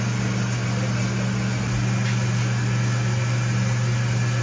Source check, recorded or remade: recorded